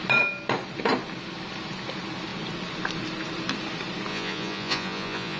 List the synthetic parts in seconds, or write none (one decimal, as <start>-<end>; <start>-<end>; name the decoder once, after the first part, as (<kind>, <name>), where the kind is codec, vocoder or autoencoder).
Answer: 4.1-5.4 (vocoder, Vocos)